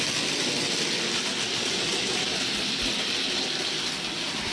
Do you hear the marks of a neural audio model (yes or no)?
no